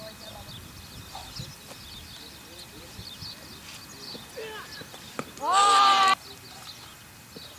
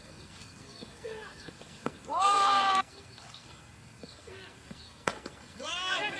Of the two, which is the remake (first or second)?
second